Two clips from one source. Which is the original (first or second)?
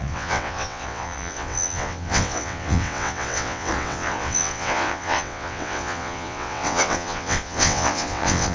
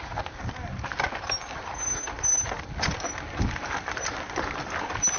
second